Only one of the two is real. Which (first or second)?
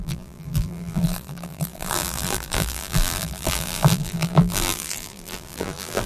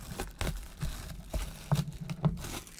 second